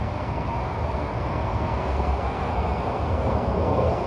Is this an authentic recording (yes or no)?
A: no